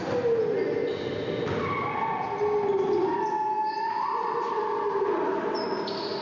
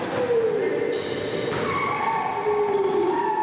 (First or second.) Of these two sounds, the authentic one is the first